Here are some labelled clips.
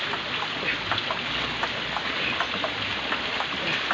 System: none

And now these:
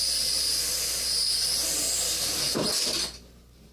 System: none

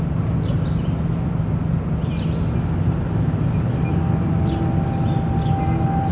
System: none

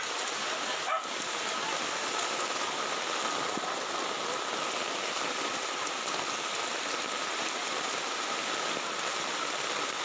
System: none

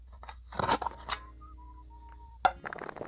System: none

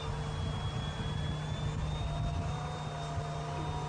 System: none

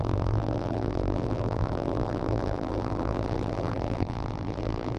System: vocoder, BigVGAN v2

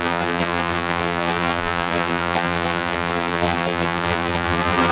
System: vocoder, BigVGAN v2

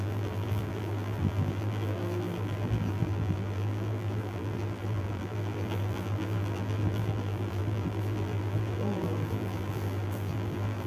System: vocoder, BigVGAN v2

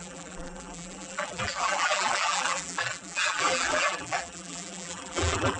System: vocoder, BigVGAN v2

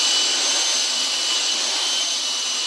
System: none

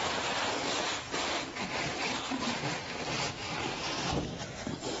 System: none